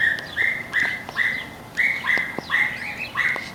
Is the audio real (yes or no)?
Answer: no